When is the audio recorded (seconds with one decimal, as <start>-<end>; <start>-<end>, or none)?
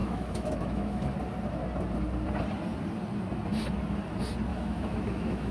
1.1-4.5